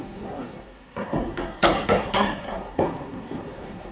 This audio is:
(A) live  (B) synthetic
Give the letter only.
B